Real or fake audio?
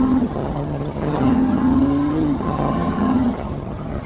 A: fake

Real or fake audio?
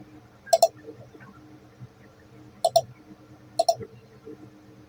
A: real